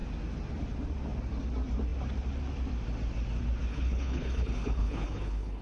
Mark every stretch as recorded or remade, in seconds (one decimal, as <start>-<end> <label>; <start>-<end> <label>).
0.0-3.7 recorded; 3.7-5.6 remade